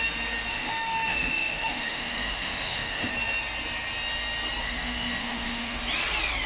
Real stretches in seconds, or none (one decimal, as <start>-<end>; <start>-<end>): 0.0-0.5; 3.1-4.6; 5.8-6.5